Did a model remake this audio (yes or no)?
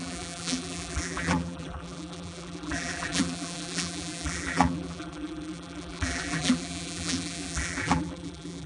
yes